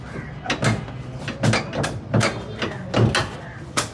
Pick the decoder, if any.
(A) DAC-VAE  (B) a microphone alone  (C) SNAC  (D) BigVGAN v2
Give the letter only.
B